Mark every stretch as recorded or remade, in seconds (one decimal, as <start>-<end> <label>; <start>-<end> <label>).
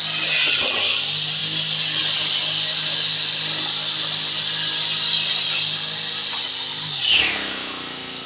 0.0-8.3 recorded